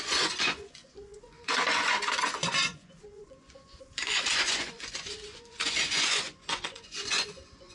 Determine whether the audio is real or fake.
fake